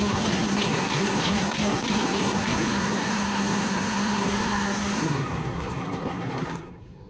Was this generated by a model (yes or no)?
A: yes